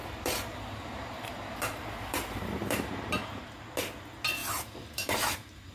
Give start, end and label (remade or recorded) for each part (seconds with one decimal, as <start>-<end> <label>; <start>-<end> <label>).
0.0-3.4 remade; 3.4-4.4 recorded; 4.4-5.7 remade